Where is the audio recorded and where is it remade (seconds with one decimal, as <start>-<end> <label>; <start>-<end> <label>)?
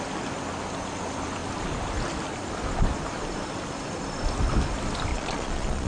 0.0-5.1 recorded; 5.1-5.9 remade